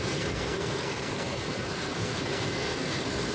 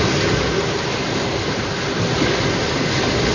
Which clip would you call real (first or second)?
second